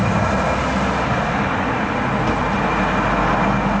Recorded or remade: recorded